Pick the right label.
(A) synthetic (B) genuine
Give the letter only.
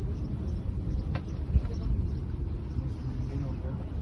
B